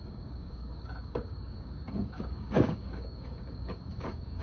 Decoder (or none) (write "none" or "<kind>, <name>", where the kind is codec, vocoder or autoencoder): codec, DAC